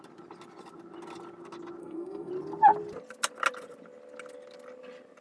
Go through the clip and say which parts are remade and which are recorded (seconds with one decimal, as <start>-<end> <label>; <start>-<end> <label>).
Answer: 0.0-1.8 recorded; 1.8-2.3 remade; 2.3-5.2 recorded